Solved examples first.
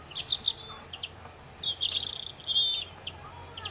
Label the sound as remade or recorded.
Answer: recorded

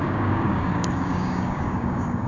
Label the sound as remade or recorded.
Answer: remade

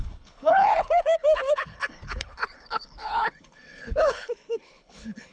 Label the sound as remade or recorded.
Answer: remade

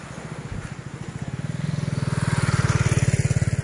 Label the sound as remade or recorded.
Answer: recorded